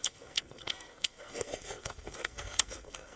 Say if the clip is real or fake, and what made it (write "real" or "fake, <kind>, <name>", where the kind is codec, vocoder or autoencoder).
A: fake, codec, SNAC